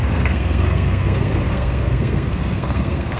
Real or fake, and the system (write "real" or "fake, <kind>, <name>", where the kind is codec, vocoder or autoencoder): fake, codec, SNAC